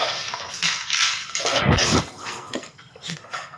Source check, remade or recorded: remade